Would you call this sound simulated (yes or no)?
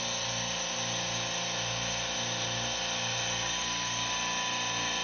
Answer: no